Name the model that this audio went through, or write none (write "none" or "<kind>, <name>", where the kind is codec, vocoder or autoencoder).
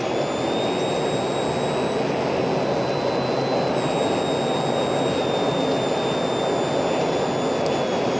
none